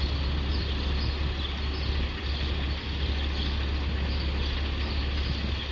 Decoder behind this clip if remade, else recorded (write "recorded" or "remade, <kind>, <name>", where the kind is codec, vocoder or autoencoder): recorded